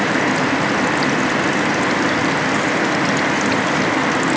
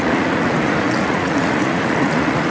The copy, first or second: second